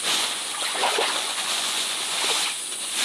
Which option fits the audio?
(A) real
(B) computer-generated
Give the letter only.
B